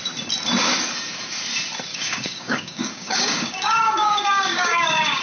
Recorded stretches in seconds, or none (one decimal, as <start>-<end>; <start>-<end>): 0.0-1.9